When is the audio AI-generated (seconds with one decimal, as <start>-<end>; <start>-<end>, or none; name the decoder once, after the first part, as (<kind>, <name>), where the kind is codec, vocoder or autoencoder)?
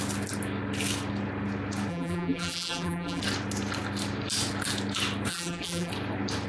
1.9-3.2 (vocoder, BigVGAN v2); 5.3-5.9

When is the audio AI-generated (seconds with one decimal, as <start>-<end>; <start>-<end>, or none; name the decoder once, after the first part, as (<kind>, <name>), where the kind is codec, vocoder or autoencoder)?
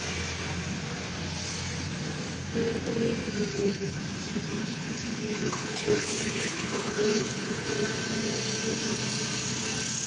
3.5-4.0 (codec, HILCodec); 4.6-7.7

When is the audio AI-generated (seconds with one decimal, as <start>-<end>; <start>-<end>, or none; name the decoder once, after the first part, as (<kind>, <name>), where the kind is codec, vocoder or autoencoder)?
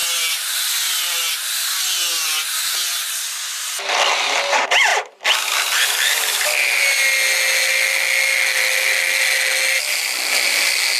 0.0-1.3 (vocoder, BigVGAN v2); 4.9-6.8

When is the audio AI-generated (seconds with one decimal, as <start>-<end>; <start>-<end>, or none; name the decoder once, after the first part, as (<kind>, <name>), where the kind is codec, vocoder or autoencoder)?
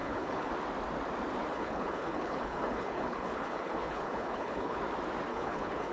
0.0-0.5 (codec, HILCodec); 1.5-4.8; 5.3-5.9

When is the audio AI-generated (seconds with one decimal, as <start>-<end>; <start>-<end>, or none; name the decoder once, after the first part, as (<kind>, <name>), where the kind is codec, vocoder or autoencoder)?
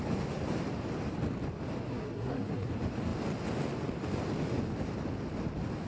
1.9-2.7 (codec, SNAC)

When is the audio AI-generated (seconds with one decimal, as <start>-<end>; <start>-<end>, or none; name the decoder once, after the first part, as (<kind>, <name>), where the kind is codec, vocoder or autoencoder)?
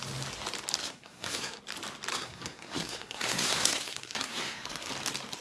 0.8-1.6 (codec, SNAC); 2.1-4.9